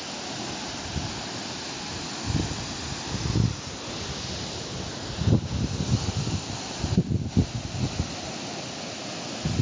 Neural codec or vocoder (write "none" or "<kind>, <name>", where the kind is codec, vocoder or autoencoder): none